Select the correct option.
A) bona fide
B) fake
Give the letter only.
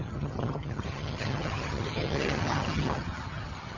B